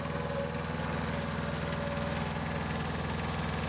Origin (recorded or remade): recorded